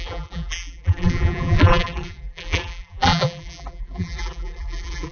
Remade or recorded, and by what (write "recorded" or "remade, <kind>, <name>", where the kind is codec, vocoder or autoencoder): remade, vocoder, BigVGAN v2